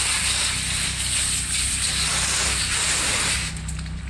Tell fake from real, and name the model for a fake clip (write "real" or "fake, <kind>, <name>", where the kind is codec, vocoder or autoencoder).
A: real